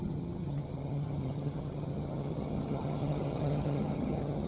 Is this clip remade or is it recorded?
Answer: remade